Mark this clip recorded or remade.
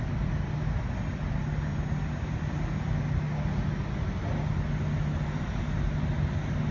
recorded